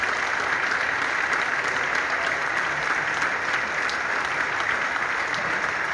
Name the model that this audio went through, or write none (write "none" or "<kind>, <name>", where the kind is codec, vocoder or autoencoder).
none